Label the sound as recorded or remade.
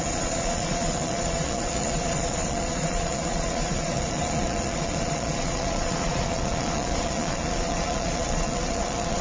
remade